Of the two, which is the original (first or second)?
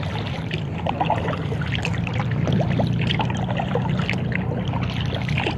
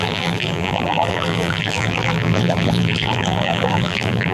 first